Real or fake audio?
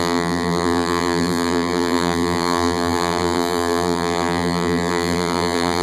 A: fake